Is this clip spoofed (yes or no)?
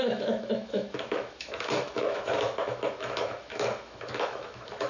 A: yes